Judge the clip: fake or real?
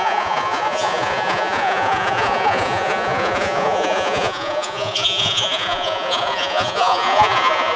fake